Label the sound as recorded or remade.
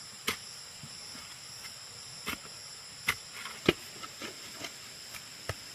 recorded